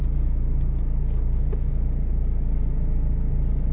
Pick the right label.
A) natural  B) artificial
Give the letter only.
A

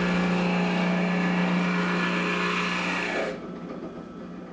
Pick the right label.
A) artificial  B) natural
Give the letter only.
B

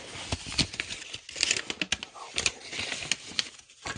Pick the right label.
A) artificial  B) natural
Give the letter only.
B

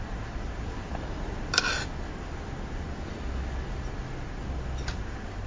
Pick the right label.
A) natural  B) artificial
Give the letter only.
A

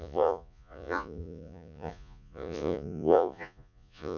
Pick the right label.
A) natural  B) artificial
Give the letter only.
B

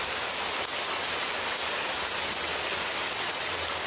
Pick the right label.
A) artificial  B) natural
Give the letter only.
B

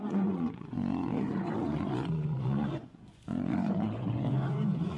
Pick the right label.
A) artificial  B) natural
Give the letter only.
A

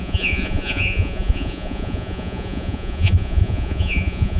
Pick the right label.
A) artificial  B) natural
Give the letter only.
A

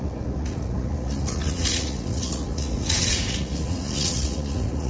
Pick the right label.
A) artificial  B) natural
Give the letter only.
A